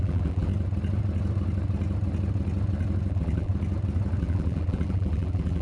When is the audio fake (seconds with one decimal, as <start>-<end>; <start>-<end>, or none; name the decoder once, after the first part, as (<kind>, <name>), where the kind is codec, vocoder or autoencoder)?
0.0-0.5 (vocoder, BigVGAN v2); 3.1-3.5; 4.2-5.6